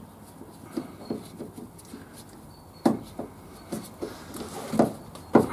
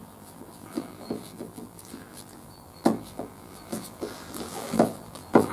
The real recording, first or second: first